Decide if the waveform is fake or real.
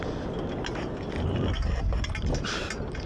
real